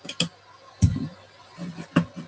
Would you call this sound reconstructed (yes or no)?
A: no